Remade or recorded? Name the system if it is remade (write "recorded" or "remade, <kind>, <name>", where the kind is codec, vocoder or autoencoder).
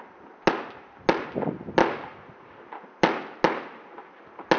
recorded